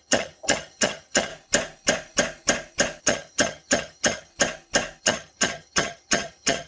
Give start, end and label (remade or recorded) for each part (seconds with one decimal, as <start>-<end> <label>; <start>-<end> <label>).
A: 0.0-1.3 remade; 1.3-3.0 recorded; 3.0-4.3 remade; 4.3-5.0 recorded; 5.0-6.7 remade